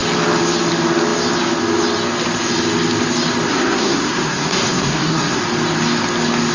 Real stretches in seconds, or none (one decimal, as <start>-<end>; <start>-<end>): 0.0-3.5; 5.4-6.5